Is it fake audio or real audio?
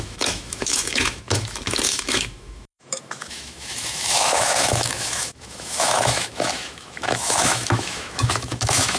fake